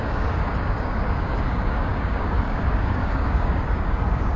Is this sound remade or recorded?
remade